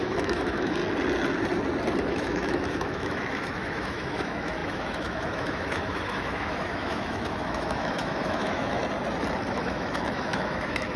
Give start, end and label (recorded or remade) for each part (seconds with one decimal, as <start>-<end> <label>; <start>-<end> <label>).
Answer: 0.0-0.8 remade; 0.8-2.1 recorded; 2.1-8.8 remade; 8.8-9.5 recorded; 9.5-11.0 remade